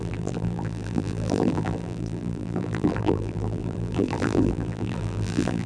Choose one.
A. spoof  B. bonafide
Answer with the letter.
A